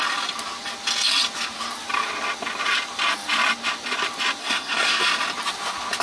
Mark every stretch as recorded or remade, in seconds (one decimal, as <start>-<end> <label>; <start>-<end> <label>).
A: 0.0-4.4 recorded; 4.4-5.0 remade; 5.0-6.0 recorded